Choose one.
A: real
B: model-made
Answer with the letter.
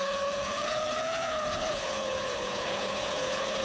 B